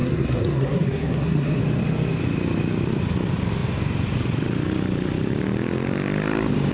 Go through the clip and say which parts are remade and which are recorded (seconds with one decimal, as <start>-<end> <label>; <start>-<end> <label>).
0.0-1.6 remade; 1.6-6.7 recorded